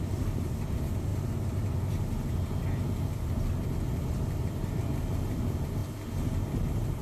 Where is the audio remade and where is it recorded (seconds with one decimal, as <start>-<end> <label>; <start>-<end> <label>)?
0.0-7.0 recorded